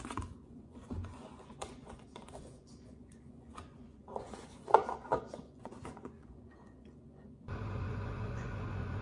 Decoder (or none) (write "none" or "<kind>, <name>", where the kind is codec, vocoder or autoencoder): vocoder, Vocos